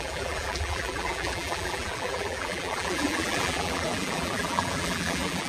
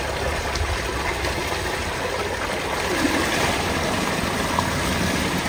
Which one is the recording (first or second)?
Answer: second